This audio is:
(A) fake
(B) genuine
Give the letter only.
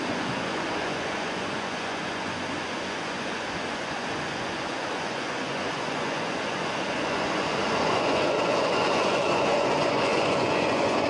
A